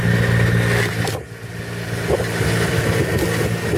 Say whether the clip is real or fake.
real